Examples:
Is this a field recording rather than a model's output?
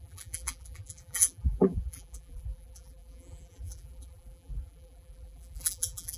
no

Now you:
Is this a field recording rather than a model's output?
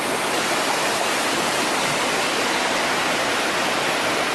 yes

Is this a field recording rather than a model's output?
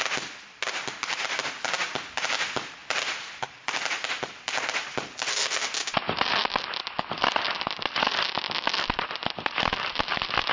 yes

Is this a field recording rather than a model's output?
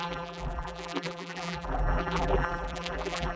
no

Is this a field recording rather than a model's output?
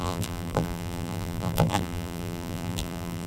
no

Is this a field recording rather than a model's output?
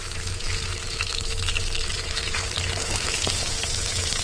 no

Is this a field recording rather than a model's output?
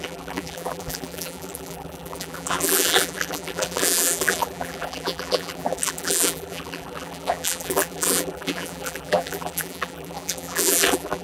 no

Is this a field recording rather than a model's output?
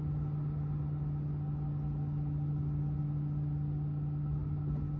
yes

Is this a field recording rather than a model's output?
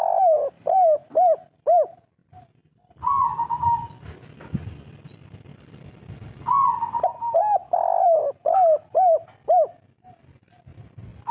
yes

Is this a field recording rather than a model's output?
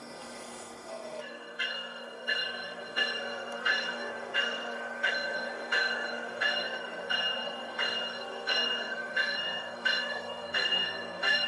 no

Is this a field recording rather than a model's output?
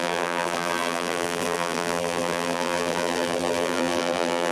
no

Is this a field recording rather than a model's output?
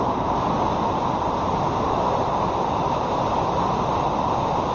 yes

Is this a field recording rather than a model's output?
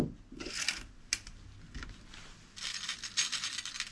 yes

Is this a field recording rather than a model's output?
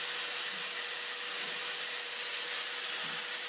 yes